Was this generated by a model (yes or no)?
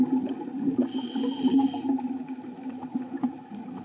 no